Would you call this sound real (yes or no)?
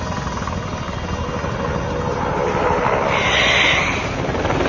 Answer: yes